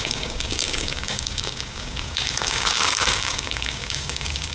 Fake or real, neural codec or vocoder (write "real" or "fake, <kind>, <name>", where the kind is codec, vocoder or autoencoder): fake, codec, DAC